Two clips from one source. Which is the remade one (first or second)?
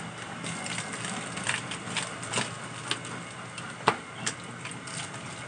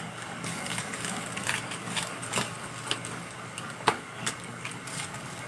second